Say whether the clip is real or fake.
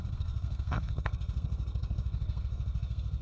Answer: fake